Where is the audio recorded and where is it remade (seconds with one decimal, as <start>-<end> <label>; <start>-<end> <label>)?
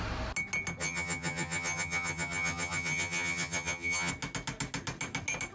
0.0-0.8 recorded; 0.8-4.1 remade; 4.1-5.5 recorded